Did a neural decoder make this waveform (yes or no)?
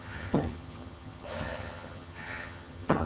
yes